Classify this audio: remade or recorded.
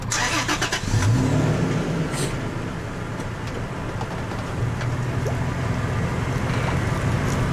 recorded